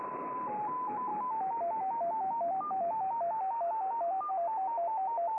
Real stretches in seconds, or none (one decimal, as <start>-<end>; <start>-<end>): 0.0-5.4